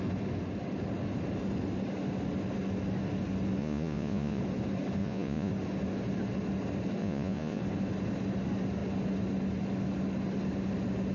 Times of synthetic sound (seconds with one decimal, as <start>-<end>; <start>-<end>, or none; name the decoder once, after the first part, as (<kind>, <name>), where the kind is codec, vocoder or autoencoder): 3.6-4.4 (vocoder, Vocos); 5.0-5.5; 7.0-7.6